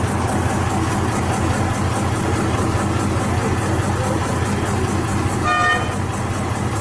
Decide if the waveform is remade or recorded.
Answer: recorded